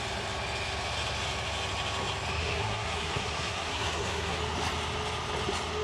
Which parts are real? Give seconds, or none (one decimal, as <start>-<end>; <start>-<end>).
0.0-2.4; 4.4-5.8